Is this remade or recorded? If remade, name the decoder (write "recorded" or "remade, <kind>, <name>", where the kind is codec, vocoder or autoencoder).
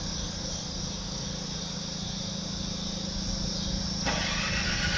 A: recorded